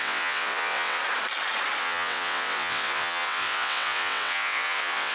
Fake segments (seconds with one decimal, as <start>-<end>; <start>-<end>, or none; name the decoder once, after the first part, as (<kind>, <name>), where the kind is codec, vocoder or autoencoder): 0.0-1.0 (vocoder, WaveNeXt); 1.8-5.1

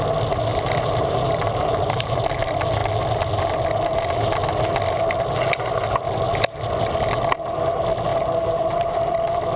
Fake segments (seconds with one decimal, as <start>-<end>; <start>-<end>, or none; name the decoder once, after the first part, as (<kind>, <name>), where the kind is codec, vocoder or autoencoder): 0.5-2.2 (vocoder, BigVGAN v2); 8.1-9.1

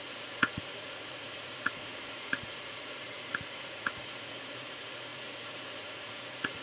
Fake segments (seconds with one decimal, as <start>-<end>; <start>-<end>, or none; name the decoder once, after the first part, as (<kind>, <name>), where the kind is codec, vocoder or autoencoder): 0.0-6.6 (vocoder, Vocos)

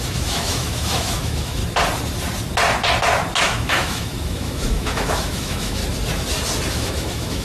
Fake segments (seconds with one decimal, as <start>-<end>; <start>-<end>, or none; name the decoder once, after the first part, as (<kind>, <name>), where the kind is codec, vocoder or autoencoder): 0.0-1.6 (autoencoder, DAC-VAE); 3.4-5.8; 6.7-7.4

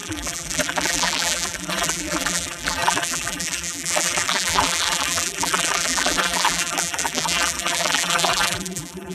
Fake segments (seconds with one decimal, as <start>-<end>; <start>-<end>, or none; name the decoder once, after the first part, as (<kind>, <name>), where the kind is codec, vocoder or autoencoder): 0.0-9.1 (vocoder, BigVGAN v2)

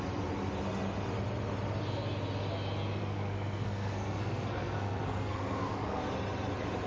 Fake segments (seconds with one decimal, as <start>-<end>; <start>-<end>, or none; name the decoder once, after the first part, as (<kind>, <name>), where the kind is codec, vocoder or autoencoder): 3.0-6.0 (codec, SNAC)

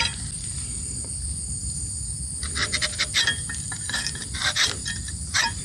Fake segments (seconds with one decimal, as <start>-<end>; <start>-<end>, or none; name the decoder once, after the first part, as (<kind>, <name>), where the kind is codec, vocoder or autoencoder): 4.2-5.6 (vocoder, BigVGAN v2)